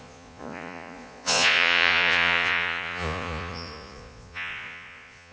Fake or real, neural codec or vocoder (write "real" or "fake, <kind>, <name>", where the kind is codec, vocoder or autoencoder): fake, vocoder, Vocos